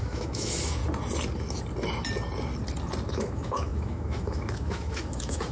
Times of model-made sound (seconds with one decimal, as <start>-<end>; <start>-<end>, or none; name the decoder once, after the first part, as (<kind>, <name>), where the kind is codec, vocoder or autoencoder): 0.0-0.8 (autoencoder, DAC-VAE); 3.1-5.5